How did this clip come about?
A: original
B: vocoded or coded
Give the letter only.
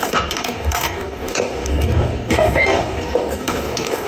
B